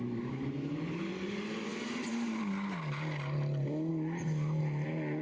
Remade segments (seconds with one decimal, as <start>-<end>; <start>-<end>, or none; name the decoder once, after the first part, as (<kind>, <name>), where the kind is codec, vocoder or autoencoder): none